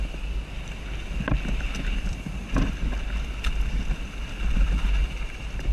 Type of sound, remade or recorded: recorded